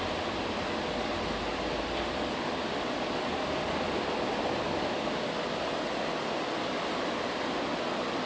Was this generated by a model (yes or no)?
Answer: no